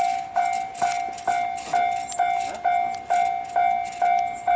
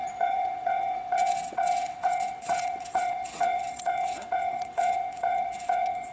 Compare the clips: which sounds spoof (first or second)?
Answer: second